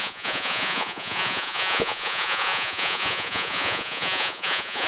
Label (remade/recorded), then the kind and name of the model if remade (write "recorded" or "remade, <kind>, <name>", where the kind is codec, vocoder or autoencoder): remade, vocoder, Vocos